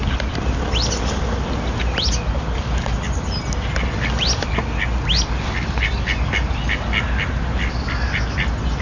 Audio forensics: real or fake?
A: real